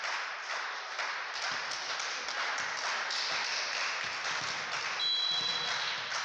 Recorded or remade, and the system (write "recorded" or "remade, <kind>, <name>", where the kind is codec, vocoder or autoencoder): recorded